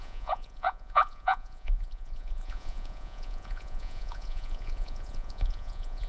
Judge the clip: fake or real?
fake